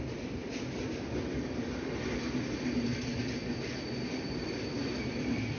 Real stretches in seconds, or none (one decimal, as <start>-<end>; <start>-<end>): 0.0-5.6